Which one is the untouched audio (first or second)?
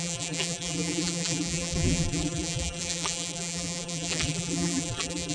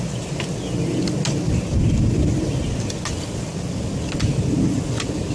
second